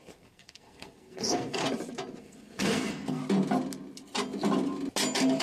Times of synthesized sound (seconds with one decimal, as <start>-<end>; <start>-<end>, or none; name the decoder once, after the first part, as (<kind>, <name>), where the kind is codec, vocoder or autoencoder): 0.0-1.6 (codec, SNAC); 2.2-3.2